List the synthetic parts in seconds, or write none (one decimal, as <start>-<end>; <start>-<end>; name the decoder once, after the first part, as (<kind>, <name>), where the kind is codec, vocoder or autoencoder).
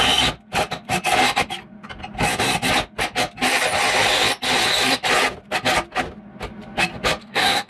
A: 7.2-7.7 (codec, DAC)